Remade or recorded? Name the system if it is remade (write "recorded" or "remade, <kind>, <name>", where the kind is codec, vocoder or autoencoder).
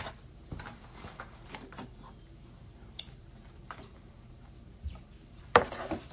remade, vocoder, BigVGAN v2